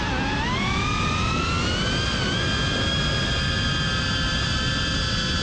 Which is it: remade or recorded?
recorded